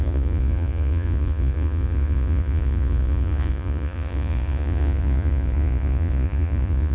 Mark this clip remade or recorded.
remade